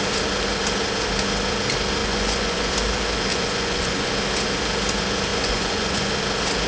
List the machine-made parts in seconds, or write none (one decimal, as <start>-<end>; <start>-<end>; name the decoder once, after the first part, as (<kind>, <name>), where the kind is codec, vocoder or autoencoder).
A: 2.0-2.7 (vocoder, Vocos); 3.3-4.1; 5.3-6.1